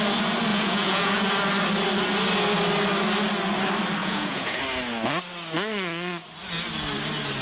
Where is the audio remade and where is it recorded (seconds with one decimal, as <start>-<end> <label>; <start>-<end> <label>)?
0.0-0.5 recorded; 0.5-1.3 remade; 1.3-4.0 recorded; 4.0-4.6 remade; 4.6-7.4 recorded

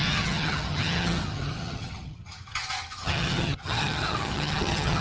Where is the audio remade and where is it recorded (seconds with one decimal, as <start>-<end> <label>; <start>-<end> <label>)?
0.0-5.0 remade

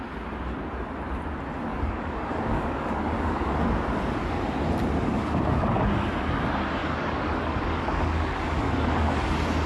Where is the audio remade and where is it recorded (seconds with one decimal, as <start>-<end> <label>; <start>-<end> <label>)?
0.0-1.7 recorded; 1.7-3.5 remade; 3.5-5.1 recorded; 5.1-6.1 remade; 6.1-6.8 recorded; 6.8-9.2 remade; 9.2-9.7 recorded

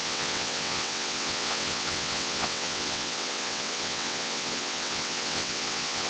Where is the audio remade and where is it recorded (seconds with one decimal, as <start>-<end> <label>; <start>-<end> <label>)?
0.0-6.1 remade

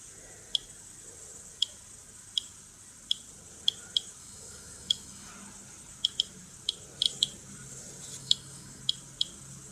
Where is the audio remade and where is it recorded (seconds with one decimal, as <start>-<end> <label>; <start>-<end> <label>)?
0.0-4.2 recorded; 4.2-5.3 remade; 5.3-8.2 recorded; 8.2-8.8 remade; 8.8-9.7 recorded